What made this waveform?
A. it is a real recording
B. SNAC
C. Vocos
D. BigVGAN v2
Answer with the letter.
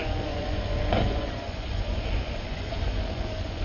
C